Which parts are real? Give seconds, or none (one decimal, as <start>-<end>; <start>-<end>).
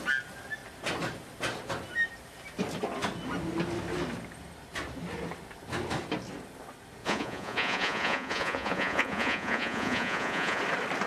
0.0-7.0; 10.6-11.1